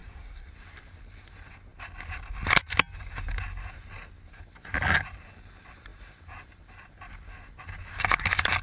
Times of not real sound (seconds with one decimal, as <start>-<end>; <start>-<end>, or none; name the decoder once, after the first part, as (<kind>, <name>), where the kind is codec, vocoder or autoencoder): 0.0-0.5 (codec, SNAC)